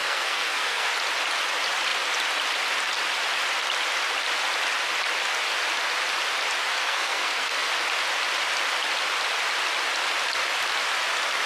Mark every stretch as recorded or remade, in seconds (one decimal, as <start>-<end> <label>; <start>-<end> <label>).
0.0-0.9 remade; 0.9-6.7 recorded; 6.7-7.7 remade; 7.7-11.5 recorded

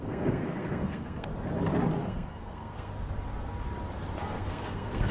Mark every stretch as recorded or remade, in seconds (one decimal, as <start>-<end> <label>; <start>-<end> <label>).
0.0-1.3 remade; 1.3-2.0 recorded; 2.0-2.9 remade; 2.9-4.3 recorded; 4.3-5.1 remade